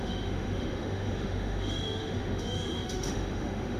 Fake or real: fake